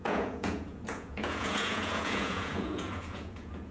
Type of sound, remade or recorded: remade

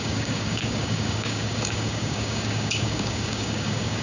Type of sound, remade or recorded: remade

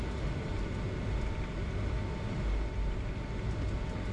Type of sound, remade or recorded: recorded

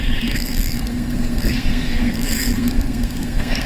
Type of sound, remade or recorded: remade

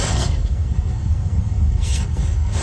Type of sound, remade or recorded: remade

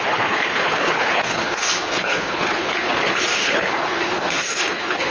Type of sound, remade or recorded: remade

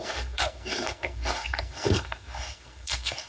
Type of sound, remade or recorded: remade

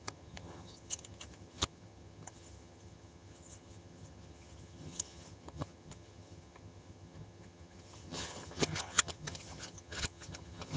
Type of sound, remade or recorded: remade